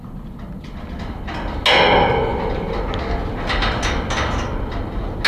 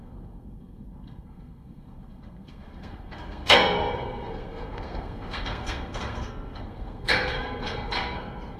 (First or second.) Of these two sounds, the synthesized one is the second